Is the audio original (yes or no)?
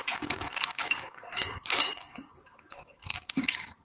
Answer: no